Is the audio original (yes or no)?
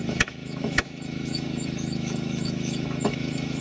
no